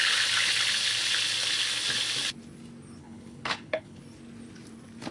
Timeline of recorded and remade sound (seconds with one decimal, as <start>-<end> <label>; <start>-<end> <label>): 0.0-3.0 recorded; 3.0-4.0 remade; 4.0-5.1 recorded